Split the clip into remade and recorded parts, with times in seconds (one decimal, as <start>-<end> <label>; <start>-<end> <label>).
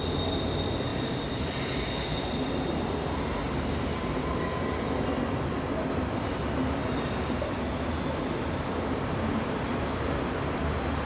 0.0-0.9 recorded; 0.9-1.5 remade; 1.5-11.1 recorded